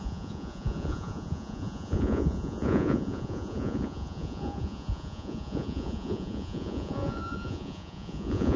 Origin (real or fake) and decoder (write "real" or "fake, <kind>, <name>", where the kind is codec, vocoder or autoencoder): fake, vocoder, Vocos